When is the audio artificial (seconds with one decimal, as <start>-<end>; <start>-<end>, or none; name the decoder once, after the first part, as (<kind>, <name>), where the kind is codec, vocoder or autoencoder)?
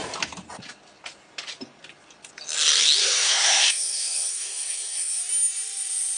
3.0-5.2 (codec, SNAC)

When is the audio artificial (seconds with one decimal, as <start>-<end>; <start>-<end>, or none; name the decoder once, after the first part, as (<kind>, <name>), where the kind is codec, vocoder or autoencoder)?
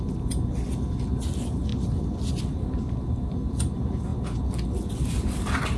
none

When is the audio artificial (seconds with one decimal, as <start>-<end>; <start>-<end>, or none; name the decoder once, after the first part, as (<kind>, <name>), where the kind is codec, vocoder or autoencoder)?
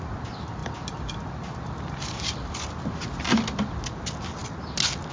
none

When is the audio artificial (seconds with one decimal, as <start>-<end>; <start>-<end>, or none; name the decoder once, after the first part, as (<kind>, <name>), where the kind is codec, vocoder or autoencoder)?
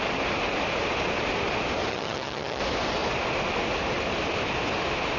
1.9-2.6 (vocoder, HiFi-GAN)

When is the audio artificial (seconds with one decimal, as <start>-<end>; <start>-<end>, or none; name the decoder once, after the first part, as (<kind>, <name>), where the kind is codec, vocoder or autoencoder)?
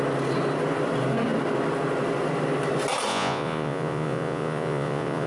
3.1-5.3 (vocoder, Vocos)